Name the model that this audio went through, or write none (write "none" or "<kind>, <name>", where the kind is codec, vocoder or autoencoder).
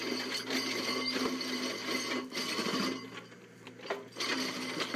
none